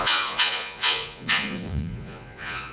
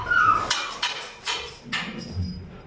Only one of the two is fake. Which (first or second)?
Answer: first